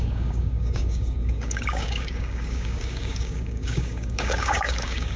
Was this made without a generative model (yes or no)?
no